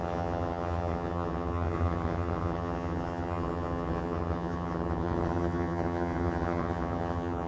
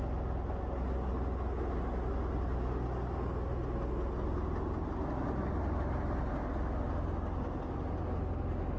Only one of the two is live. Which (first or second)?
second